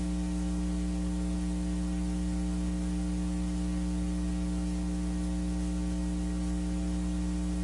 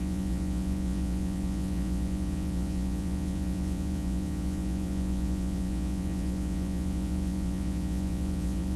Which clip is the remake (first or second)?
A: second